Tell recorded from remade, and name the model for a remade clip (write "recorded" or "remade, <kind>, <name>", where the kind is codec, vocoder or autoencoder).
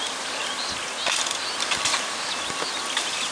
recorded